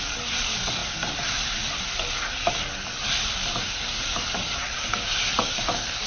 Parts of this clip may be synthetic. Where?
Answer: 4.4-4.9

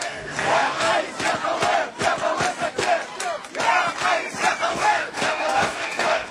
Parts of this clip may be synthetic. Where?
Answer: 0.0-0.9; 4.7-6.3

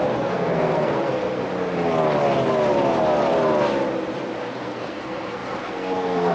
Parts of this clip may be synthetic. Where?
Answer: 0.0-1.4; 4.5-6.3

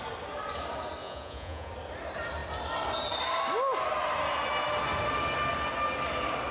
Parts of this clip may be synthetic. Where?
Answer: 1.0-1.7

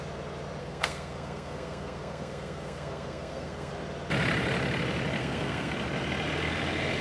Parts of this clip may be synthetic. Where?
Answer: 0.6-3.7; 5.2-5.7

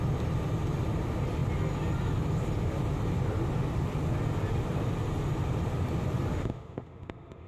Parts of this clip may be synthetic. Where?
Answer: 6.3-7.5

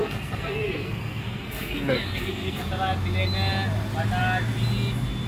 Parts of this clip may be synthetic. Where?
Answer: 0.0-2.7